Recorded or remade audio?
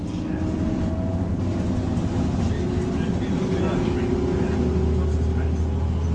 recorded